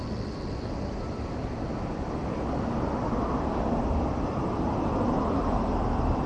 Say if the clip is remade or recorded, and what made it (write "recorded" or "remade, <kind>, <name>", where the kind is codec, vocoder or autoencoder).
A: recorded